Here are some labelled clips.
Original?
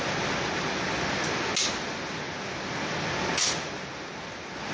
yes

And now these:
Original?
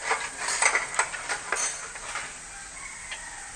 yes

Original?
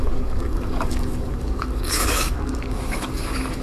no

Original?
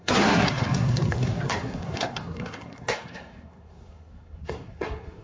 no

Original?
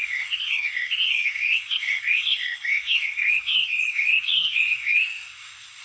no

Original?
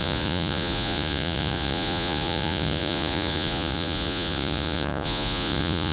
no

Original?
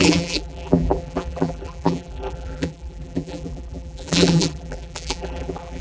no